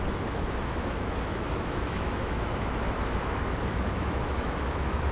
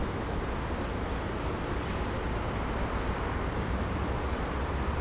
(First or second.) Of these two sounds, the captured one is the second